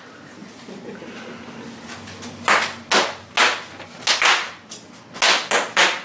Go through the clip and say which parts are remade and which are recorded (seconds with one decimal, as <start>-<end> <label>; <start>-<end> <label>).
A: 0.0-6.0 recorded